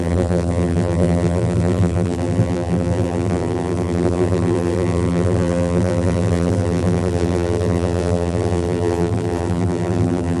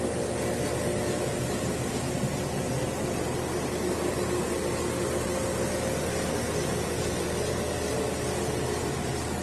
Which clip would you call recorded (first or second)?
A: second